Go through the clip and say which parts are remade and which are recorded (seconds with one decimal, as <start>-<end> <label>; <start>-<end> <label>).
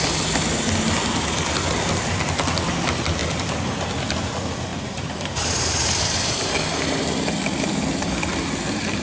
0.0-4.7 recorded; 4.7-6.5 remade; 6.5-9.0 recorded